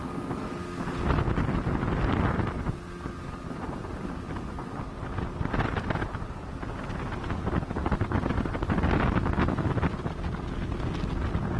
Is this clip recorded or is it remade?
recorded